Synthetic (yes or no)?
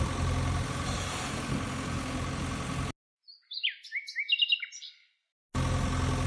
no